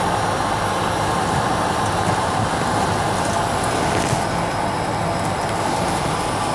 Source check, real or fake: real